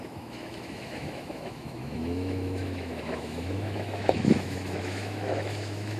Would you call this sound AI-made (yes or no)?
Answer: yes